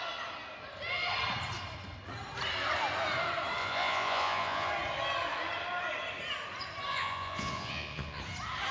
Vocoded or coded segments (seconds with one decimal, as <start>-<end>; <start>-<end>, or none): 3.6-4.7; 6.9-8.2